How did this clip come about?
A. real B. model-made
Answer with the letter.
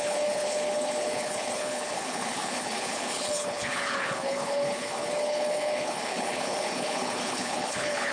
B